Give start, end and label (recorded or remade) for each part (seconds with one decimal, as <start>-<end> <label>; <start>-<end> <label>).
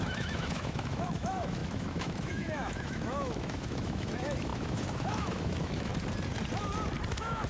0.0-5.9 remade; 5.9-7.1 recorded; 7.1-7.5 remade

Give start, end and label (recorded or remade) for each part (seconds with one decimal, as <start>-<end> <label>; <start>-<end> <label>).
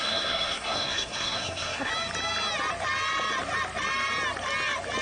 0.0-1.9 remade; 1.9-5.0 recorded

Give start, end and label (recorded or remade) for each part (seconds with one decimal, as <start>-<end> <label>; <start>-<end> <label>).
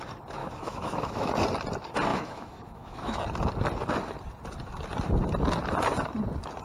0.0-0.4 recorded; 0.4-1.3 remade; 1.3-2.1 recorded; 2.1-3.2 remade; 3.2-6.6 recorded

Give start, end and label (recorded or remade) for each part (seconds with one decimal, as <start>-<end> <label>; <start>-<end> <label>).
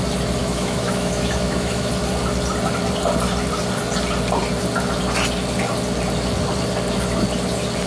0.0-0.4 recorded; 0.4-1.9 remade; 1.9-7.9 recorded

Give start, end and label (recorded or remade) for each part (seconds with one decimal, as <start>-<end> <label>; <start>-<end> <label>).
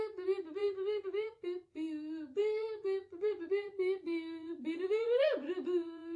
0.0-0.6 recorded; 0.6-1.4 remade; 1.4-2.4 recorded; 2.4-6.2 remade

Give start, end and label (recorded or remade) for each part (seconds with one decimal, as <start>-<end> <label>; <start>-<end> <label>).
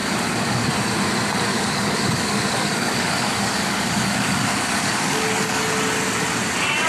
0.0-0.7 remade; 0.7-1.5 recorded; 1.5-5.6 remade; 5.6-6.9 recorded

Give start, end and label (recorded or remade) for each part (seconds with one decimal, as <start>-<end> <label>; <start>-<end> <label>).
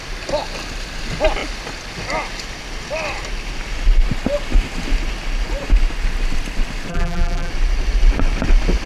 0.0-6.9 recorded; 6.9-7.5 remade; 7.5-8.9 recorded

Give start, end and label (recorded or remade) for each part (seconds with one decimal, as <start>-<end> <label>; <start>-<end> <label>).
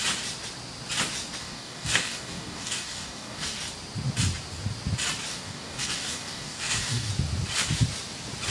0.0-1.4 recorded; 1.4-3.6 remade; 3.6-5.3 recorded; 5.3-7.1 remade; 7.1-8.5 recorded